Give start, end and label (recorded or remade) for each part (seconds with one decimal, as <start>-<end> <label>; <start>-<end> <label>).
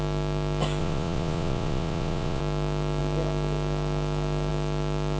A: 0.0-0.8 recorded; 0.8-2.4 remade; 2.4-5.2 recorded